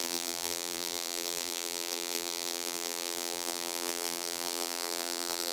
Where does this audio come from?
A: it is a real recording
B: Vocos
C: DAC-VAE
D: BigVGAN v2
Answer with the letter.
D